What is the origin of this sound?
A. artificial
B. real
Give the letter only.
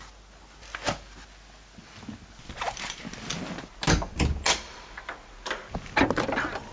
B